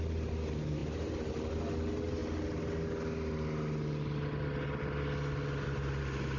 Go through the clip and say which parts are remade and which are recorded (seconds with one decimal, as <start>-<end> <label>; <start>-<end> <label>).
0.0-6.4 recorded